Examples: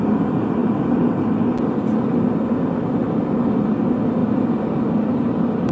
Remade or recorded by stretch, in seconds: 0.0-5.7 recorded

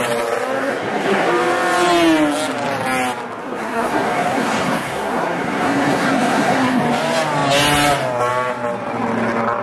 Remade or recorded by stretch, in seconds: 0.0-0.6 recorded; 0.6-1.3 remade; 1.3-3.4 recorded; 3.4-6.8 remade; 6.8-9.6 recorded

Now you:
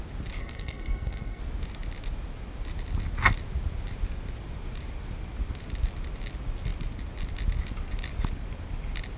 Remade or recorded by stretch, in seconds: 0.0-0.4 recorded; 0.4-1.4 remade; 1.4-9.2 recorded

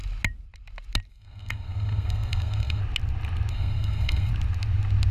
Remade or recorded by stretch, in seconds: 0.0-1.1 recorded; 1.1-2.8 remade; 2.8-3.5 recorded; 3.5-4.3 remade; 4.3-5.1 recorded